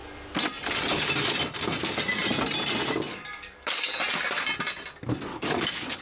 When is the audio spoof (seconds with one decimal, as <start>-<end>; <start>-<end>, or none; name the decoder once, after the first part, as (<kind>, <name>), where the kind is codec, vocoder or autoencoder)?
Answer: 3.1-3.8 (codec, DAC); 5.3-6.0